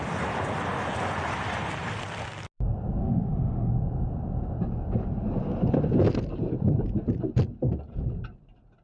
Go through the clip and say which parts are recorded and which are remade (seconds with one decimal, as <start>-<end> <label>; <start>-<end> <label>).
0.0-3.0 recorded; 3.0-3.7 remade; 3.7-8.8 recorded